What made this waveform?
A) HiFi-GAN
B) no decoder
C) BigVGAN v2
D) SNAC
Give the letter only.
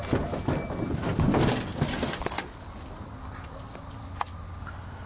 B